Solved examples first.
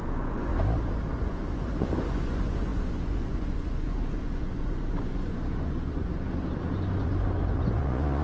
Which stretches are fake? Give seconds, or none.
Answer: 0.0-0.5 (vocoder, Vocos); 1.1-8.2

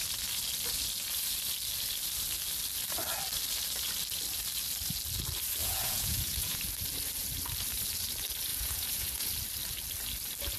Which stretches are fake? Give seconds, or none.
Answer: 5.6-6.6 (vocoder, Vocos); 8.5-9.3

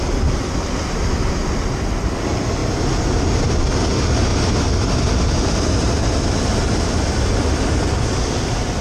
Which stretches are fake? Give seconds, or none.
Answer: none

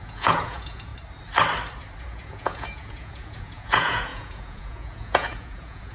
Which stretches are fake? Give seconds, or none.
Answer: 0.0-0.9 (vocoder, Vocos); 2.0-5.9